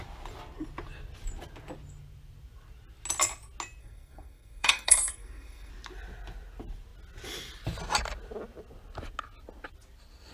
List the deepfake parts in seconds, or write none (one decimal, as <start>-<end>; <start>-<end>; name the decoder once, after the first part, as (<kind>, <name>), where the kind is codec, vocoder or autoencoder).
3.8-5.7 (codec, SNAC)